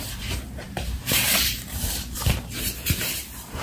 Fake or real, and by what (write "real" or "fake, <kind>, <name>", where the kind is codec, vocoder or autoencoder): fake, vocoder, BigVGAN v2